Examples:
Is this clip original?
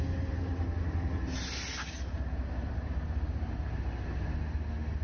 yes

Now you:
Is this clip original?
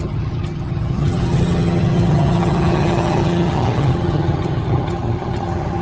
no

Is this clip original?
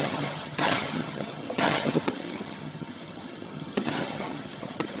no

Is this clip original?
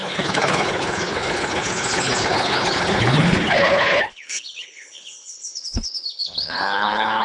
no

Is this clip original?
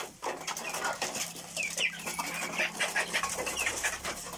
no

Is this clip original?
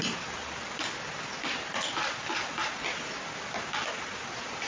yes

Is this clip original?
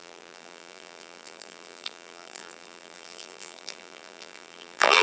no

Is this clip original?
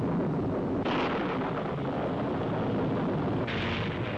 yes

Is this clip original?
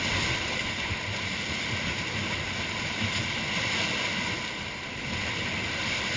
yes